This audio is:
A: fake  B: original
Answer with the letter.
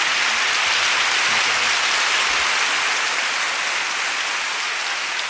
B